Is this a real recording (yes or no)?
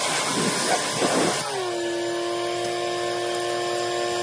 yes